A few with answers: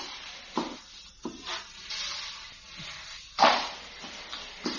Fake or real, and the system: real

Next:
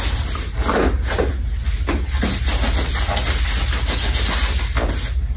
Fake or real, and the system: real